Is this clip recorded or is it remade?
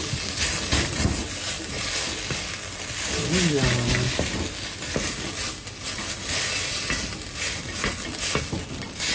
recorded